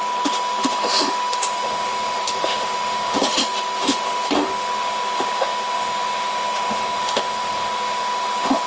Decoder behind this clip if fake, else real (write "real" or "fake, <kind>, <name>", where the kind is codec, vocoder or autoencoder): fake, autoencoder, DAC-VAE